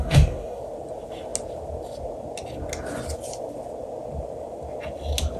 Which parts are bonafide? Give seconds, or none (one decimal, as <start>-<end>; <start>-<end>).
0.6-5.4